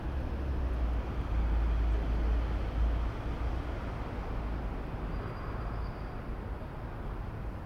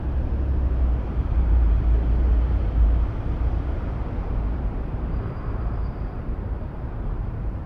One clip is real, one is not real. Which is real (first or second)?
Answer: first